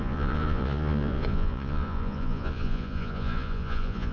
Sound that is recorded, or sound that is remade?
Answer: remade